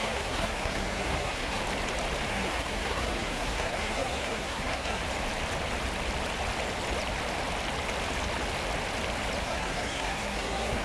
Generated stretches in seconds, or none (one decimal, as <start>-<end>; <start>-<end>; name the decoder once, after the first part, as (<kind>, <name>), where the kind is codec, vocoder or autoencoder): 0.0-1.6 (codec, SNAC); 2.3-5.0; 9.4-10.8